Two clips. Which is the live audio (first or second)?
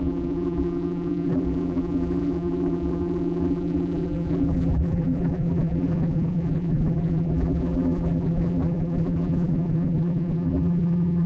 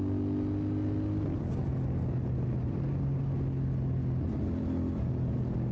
second